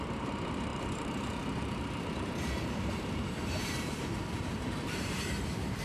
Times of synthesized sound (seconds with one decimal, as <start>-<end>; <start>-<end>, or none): 0.0-5.8